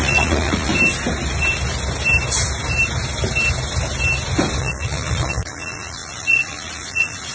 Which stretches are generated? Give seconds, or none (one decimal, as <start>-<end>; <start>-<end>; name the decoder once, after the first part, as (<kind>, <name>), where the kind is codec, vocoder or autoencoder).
0.0-0.7 (vocoder, Vocos); 4.6-7.3